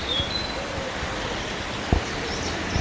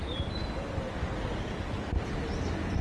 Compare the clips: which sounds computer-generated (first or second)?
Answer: first